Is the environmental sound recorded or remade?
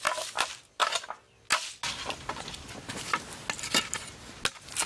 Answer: recorded